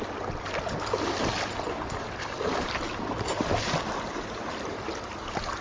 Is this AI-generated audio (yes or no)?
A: no